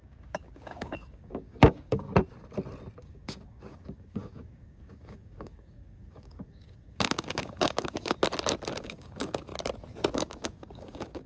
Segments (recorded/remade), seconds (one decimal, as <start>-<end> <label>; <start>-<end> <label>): 0.0-2.1 remade; 2.1-3.0 recorded; 3.0-8.2 remade; 8.2-8.8 recorded; 8.8-9.5 remade; 9.5-10.1 recorded; 10.1-11.3 remade